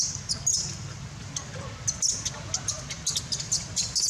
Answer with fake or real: real